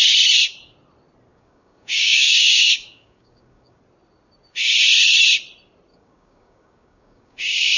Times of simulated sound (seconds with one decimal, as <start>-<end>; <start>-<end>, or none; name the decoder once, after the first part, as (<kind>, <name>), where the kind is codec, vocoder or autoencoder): 1.3-3.8 (codec, DAC); 5.9-7.8

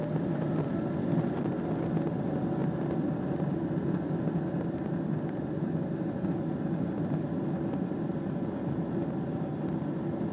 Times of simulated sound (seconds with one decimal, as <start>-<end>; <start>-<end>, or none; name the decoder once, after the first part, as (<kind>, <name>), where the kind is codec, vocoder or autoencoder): none